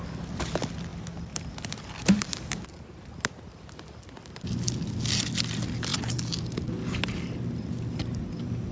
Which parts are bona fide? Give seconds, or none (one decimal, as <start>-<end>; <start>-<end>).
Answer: 0.0-8.7